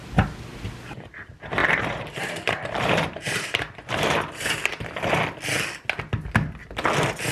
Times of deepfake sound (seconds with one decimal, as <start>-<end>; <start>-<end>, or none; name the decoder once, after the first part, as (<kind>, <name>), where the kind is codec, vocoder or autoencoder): 1.6-5.1 (vocoder, BigVGAN v2)